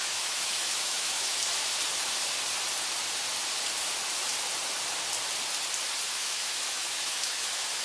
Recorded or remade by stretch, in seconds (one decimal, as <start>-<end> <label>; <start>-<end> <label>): 0.0-1.4 remade; 1.4-6.1 recorded; 6.1-7.8 remade